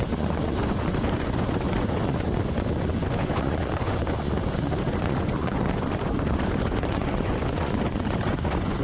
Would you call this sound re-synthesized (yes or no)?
yes